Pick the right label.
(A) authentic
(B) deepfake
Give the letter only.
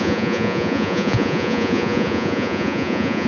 B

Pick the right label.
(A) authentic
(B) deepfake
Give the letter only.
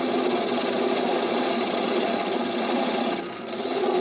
B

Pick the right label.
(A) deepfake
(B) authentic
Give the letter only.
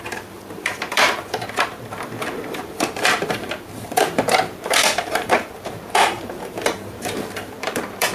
A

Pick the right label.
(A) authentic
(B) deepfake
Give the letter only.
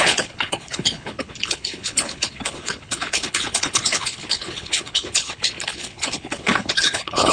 B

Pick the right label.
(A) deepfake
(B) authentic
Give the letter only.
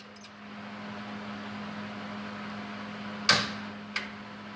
B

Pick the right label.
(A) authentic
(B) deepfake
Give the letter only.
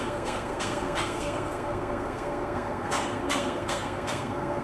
B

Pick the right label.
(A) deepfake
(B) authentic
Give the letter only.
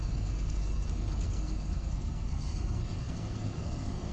A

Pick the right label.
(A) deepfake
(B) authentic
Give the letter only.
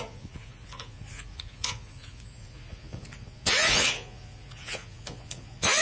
A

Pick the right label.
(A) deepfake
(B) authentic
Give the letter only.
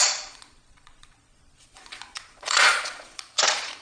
A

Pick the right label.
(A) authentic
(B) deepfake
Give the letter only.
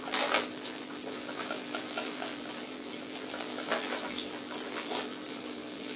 B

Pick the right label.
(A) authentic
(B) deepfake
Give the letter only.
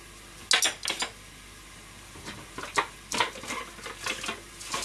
A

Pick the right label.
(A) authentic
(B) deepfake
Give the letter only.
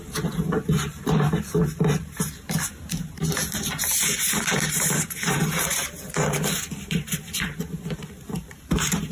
B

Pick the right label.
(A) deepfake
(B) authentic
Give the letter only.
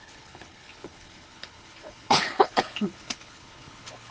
A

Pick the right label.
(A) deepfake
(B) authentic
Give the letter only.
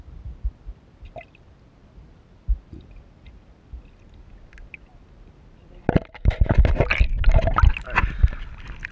B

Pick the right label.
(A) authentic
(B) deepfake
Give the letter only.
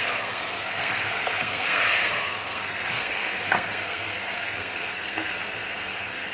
B